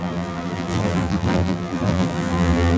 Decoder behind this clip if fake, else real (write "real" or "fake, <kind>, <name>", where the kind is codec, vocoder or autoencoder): fake, vocoder, BigVGAN v2